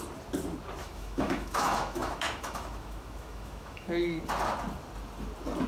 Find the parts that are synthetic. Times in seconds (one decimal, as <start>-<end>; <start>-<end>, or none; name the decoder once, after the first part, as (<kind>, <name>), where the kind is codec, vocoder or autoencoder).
0.8-4.2 (autoencoder, DAC-VAE)